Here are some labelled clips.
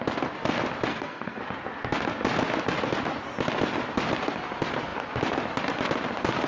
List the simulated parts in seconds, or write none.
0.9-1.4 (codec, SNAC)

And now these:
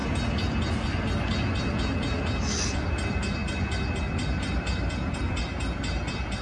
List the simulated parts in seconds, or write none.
none

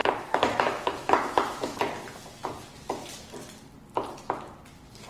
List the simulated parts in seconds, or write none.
0.0-1.8 (autoencoder, DAC-VAE)